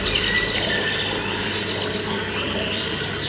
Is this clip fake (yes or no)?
no